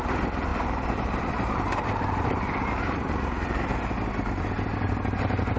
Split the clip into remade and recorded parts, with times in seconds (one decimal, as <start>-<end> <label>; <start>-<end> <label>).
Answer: 0.0-0.5 recorded; 0.5-3.9 remade; 3.9-5.6 recorded